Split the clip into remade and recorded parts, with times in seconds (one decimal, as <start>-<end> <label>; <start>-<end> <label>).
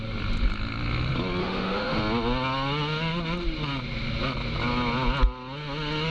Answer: 0.0-1.4 recorded; 1.4-2.0 remade; 2.0-6.1 recorded